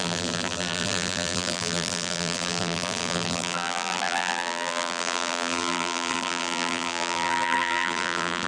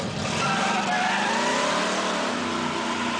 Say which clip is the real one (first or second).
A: second